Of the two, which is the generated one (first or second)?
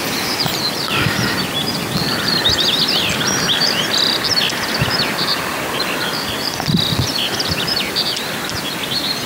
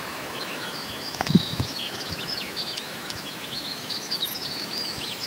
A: second